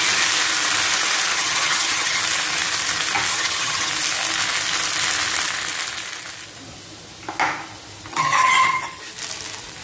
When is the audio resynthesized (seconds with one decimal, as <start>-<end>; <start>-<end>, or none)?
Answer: 1.3-2.2; 3.3-3.9; 8.1-9.0